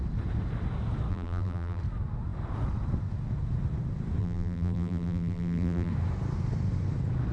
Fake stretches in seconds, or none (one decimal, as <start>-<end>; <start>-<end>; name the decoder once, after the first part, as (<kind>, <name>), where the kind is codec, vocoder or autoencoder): 1.1-1.8 (vocoder, BigVGAN v2); 4.2-5.9